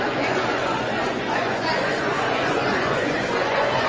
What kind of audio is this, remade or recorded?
remade